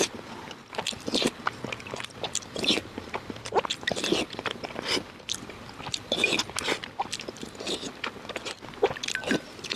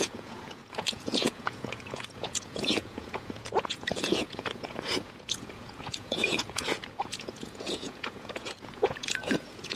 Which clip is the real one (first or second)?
first